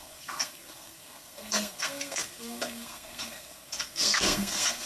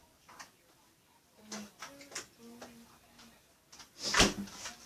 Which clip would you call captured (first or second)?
second